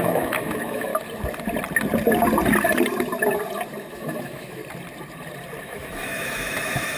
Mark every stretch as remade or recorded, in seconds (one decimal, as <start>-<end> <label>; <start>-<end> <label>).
0.0-0.9 remade; 0.9-3.9 recorded; 3.9-4.6 remade; 4.6-5.6 recorded; 5.6-7.0 remade